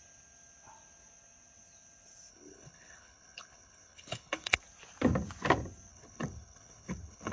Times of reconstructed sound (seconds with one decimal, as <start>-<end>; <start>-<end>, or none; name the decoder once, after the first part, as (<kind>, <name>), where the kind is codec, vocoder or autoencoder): 2.3-4.6 (codec, HILCodec); 5.9-7.3